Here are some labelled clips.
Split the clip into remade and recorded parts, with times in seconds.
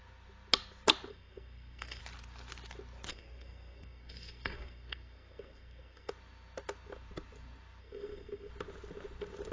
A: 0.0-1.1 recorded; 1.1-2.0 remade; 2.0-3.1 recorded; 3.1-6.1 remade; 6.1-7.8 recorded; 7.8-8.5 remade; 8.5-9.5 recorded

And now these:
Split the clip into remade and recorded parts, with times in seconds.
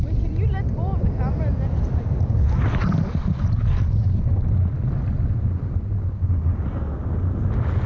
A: 0.0-2.8 recorded; 2.8-3.6 remade; 3.6-7.9 recorded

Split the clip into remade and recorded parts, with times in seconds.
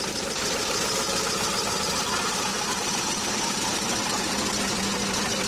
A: 0.0-2.5 recorded; 2.5-3.6 remade; 3.6-5.5 recorded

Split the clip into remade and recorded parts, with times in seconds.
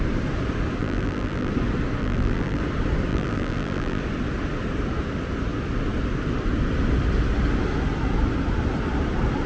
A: 0.0-0.8 recorded; 0.8-1.5 remade; 1.5-2.0 recorded; 2.0-2.6 remade; 2.6-3.1 recorded; 3.1-4.0 remade; 4.0-9.5 recorded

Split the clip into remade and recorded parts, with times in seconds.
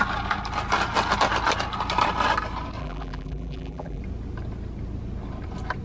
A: 0.0-2.8 recorded; 2.8-4.0 remade; 4.0-5.8 recorded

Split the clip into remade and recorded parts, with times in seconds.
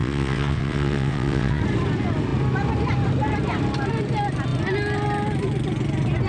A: 0.0-1.6 remade; 1.6-6.3 recorded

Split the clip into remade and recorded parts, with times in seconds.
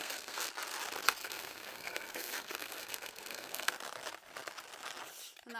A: 0.0-0.5 remade; 0.5-1.2 recorded; 1.2-3.7 remade; 3.7-5.6 recorded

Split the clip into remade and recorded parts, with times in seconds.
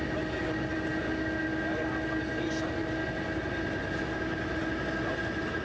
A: 0.0-5.6 recorded